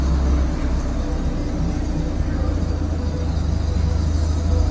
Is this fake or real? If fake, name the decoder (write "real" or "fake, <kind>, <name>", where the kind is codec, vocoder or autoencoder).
real